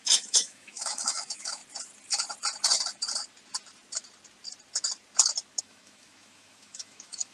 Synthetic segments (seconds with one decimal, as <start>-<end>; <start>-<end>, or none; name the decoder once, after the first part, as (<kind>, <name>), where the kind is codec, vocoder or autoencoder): 0.0-1.6 (autoencoder, DAC-VAE); 5.6-7.3

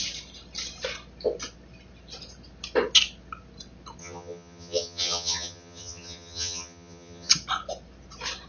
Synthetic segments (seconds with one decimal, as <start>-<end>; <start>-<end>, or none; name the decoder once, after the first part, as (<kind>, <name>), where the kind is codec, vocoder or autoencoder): 4.0-7.3 (vocoder, HiFi-GAN)

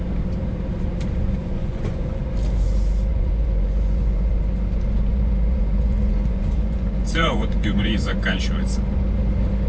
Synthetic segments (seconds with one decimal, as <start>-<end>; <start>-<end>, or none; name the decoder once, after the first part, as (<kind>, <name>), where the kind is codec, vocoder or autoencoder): 1.4-2.2 (vocoder, Vocos); 3.1-4.3; 5.1-8.4

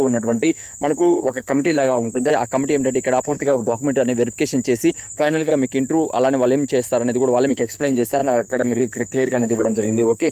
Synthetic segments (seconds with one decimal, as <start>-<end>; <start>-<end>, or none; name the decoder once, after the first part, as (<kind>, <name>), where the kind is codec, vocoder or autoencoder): 0.0-2.3 (codec, SNAC); 3.2-3.8; 4.9-5.5; 7.5-10.3

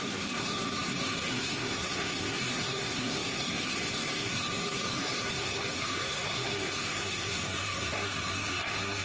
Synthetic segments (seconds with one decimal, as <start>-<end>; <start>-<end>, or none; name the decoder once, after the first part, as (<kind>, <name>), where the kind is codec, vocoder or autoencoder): 0.0-9.0 (codec, SNAC)

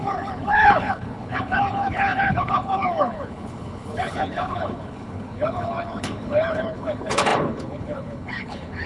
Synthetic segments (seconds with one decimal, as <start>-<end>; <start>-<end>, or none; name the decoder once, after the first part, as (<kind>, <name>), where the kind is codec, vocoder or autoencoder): 0.0-8.9 (codec, HILCodec)